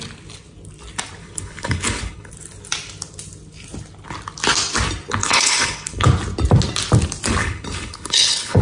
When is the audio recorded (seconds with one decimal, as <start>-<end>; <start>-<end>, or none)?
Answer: 0.0-1.2; 2.3-5.2; 6.1-7.4